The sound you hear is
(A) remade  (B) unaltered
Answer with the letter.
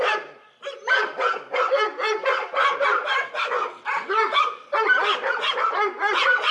B